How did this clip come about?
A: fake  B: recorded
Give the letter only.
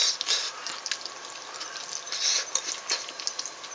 B